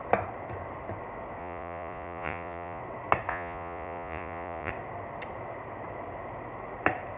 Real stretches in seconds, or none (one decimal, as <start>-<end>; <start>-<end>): 0.0-1.4; 2.8-3.3; 4.7-7.2